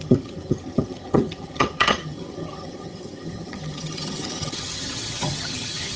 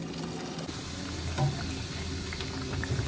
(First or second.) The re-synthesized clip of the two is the first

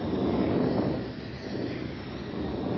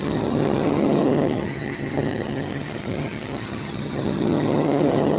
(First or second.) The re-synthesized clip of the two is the second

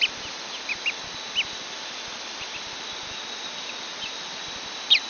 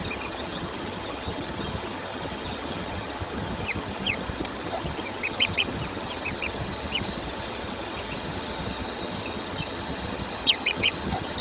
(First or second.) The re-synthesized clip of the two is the second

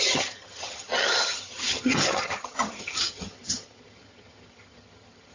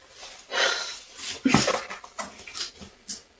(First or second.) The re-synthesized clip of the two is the first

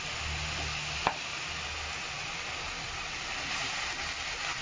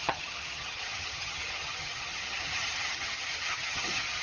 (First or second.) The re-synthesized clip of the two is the second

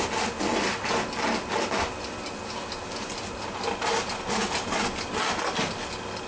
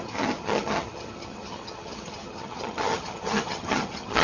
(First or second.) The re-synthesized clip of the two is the second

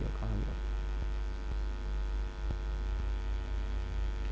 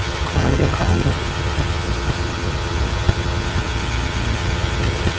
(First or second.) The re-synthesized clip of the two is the second